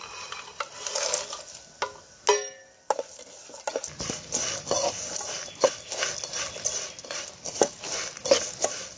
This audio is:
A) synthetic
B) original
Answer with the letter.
B